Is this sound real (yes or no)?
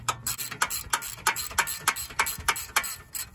yes